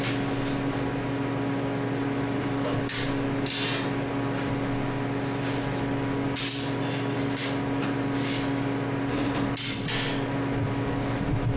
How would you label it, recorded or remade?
recorded